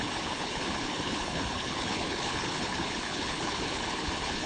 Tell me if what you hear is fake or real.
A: fake